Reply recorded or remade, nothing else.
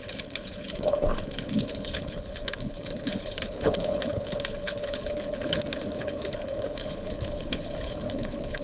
remade